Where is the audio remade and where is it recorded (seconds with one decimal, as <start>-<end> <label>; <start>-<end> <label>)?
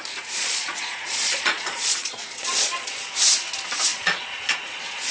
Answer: 0.0-0.4 recorded; 0.4-2.9 remade; 2.9-3.9 recorded; 3.9-5.1 remade